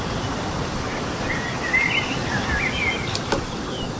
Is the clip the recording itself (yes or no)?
yes